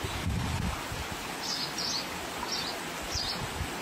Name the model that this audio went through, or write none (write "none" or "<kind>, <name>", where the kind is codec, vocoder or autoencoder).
none